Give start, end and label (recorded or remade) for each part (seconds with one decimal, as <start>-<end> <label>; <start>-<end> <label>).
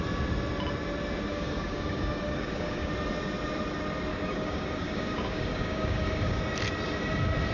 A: 0.0-1.3 recorded; 1.3-2.9 remade; 2.9-4.1 recorded; 4.1-6.4 remade; 6.4-7.5 recorded